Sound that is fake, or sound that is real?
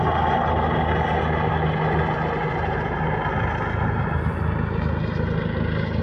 real